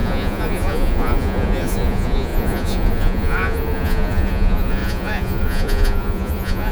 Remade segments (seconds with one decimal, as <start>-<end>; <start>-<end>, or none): 0.0-6.7